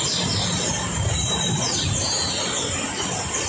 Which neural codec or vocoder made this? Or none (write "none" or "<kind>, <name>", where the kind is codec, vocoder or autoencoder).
none